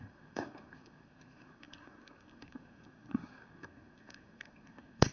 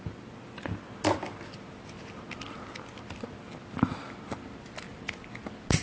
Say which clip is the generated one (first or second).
first